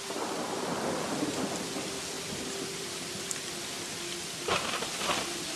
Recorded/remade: recorded